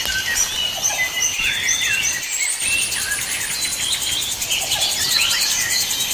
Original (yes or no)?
yes